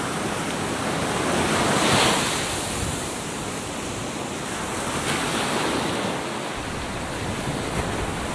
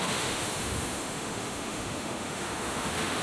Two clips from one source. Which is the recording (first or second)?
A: first